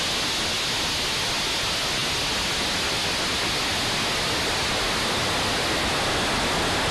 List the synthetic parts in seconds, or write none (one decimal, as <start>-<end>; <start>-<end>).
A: none